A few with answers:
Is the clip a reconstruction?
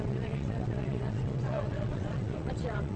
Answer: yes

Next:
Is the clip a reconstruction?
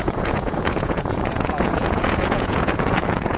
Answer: yes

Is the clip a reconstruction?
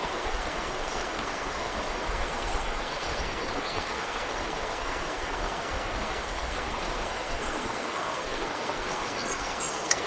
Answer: yes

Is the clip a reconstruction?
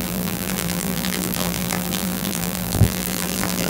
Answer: yes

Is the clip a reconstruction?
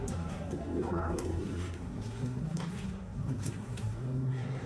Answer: yes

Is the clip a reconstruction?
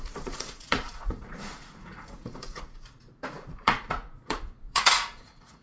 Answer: yes